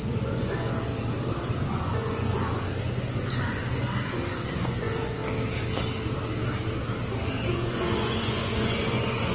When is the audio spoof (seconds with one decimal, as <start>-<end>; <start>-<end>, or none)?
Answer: 0.0-0.9; 1.5-5.2; 7.5-9.3